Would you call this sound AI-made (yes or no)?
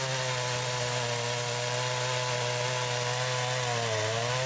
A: no